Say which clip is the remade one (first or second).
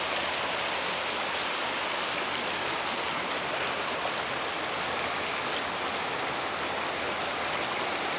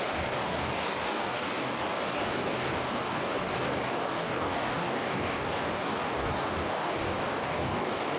second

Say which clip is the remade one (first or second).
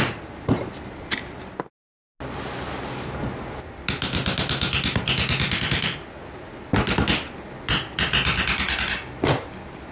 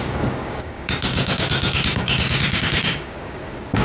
second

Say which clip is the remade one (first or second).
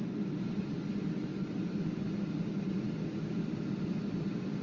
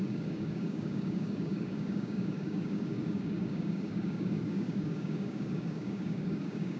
second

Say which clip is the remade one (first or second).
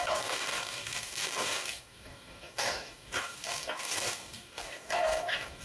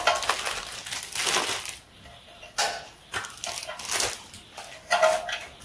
first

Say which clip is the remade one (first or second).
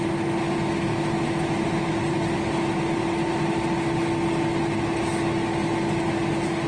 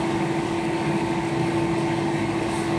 second